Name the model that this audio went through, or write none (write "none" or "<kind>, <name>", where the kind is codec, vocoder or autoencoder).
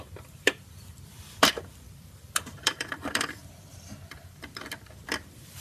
vocoder, BigVGAN v2